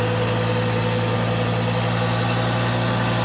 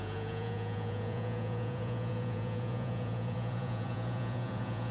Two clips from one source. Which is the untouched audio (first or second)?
first